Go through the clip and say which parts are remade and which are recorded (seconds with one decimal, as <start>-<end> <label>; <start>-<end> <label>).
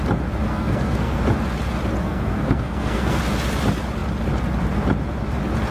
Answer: 0.0-0.5 recorded; 0.5-1.2 remade; 1.2-2.0 recorded; 2.0-3.2 remade; 3.2-5.7 recorded